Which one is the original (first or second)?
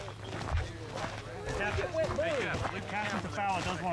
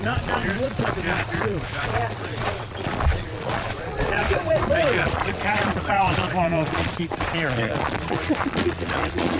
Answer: first